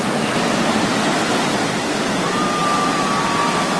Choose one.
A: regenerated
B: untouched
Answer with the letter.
B